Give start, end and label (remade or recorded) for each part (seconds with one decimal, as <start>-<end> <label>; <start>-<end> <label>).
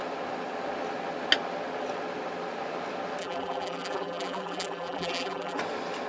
0.0-3.2 recorded; 3.2-5.6 remade; 5.6-6.1 recorded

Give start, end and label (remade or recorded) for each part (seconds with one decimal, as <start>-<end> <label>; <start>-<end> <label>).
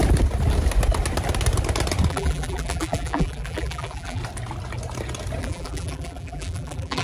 0.0-2.1 recorded; 2.1-4.2 remade; 4.2-5.4 recorded; 5.4-7.0 remade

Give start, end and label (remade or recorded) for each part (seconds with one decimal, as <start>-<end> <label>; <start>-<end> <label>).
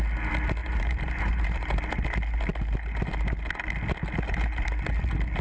0.0-0.6 recorded; 0.6-1.8 remade; 1.8-5.4 recorded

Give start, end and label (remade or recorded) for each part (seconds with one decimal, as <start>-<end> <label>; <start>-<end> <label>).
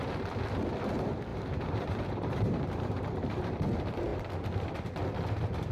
0.0-1.3 recorded; 1.3-3.6 remade; 3.6-5.7 recorded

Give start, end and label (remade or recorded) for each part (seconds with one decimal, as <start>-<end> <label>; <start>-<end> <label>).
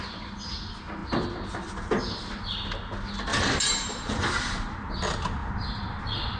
0.0-3.3 recorded; 3.3-4.9 remade; 4.9-5.4 recorded; 5.4-6.4 remade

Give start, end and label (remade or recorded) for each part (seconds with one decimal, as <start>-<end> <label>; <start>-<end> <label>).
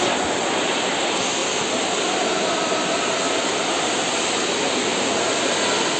0.0-0.4 recorded; 0.4-0.9 remade; 0.9-6.0 recorded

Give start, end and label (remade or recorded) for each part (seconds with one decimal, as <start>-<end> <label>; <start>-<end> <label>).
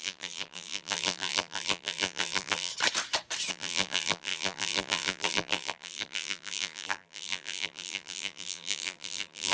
0.0-2.7 remade; 2.7-3.5 recorded; 3.5-9.5 remade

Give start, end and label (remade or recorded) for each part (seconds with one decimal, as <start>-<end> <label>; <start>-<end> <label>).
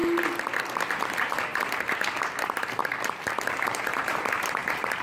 0.0-1.0 recorded; 1.0-1.5 remade; 1.5-2.4 recorded; 2.4-2.8 remade; 2.8-3.5 recorded; 3.5-5.0 remade